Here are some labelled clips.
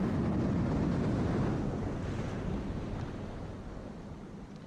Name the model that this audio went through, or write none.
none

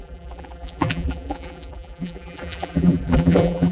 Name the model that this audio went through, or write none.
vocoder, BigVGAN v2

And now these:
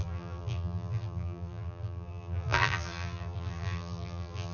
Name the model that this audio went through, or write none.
vocoder, BigVGAN v2